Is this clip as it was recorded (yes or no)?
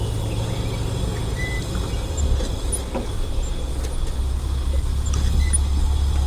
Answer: yes